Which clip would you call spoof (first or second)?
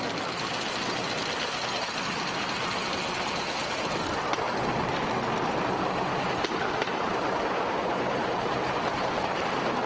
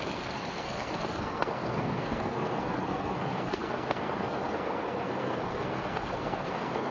second